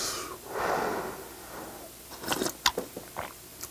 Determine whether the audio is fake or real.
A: real